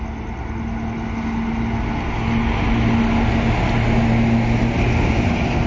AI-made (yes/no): no